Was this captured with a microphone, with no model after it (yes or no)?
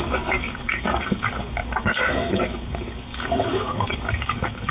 no